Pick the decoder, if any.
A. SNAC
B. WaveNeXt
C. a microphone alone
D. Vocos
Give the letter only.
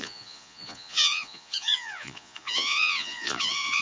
D